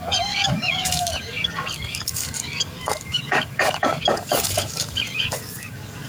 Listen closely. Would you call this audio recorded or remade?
remade